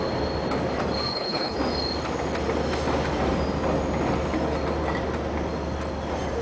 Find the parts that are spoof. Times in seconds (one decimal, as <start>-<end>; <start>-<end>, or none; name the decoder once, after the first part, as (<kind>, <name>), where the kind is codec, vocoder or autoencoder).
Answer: 1.1-1.6 (codec, HILCodec)